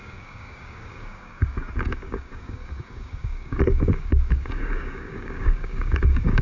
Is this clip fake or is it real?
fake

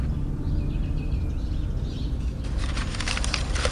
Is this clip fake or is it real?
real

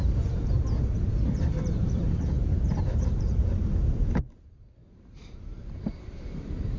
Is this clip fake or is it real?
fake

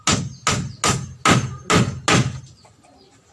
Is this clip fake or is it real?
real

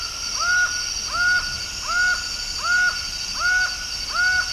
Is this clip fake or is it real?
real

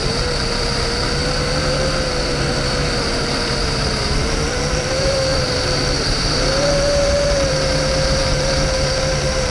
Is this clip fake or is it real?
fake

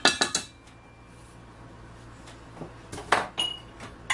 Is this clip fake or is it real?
real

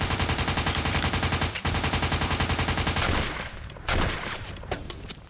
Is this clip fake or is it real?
fake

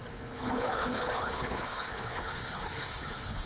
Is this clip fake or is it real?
fake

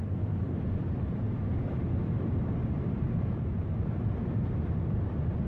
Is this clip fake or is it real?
fake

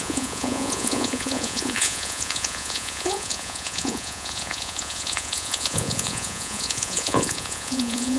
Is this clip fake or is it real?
fake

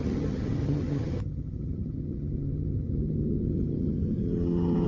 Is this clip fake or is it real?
fake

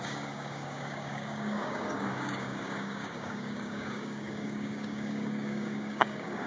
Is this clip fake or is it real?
fake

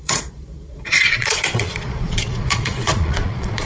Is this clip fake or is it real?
fake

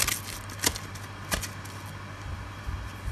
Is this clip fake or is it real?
real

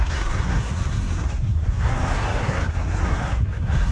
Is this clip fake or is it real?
fake